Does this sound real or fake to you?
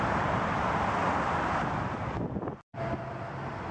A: fake